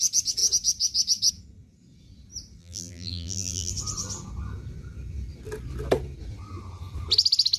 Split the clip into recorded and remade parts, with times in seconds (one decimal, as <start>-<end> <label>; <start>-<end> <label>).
0.0-2.6 recorded; 2.6-3.7 remade; 3.7-7.6 recorded